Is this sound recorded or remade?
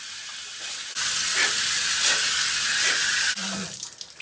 recorded